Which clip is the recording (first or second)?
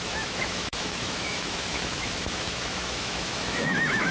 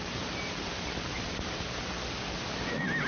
second